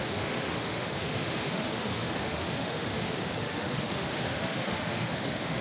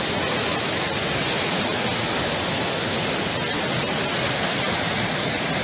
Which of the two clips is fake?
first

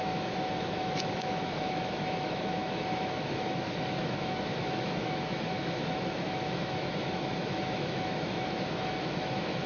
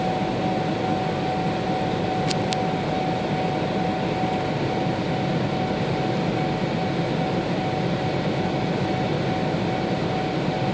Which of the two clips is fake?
first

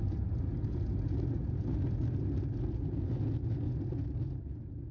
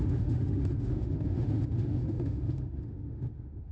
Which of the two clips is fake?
second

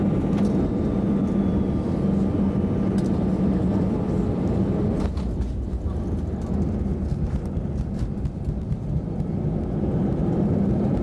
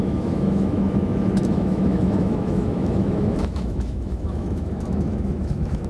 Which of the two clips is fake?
second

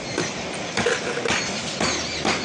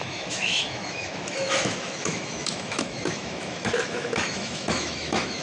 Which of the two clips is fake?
second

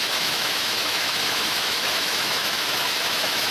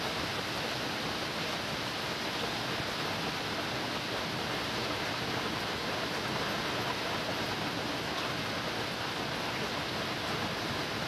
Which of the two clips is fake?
first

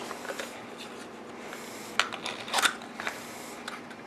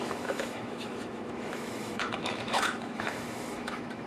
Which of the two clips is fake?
second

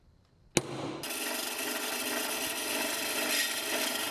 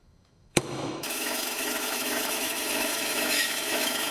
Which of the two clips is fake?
second